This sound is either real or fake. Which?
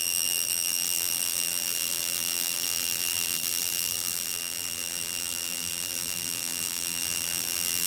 fake